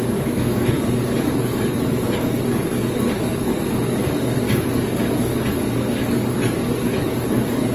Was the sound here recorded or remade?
remade